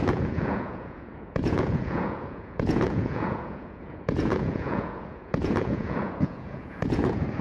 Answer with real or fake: fake